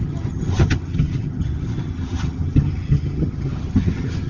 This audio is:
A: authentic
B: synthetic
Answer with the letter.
B